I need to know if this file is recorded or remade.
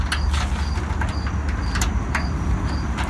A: recorded